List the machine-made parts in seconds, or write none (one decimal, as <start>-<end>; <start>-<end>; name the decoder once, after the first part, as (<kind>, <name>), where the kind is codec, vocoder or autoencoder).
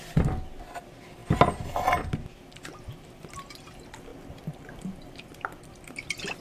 4.1-4.9 (vocoder, BigVGAN v2)